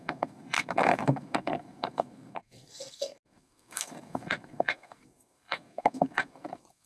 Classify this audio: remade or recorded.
remade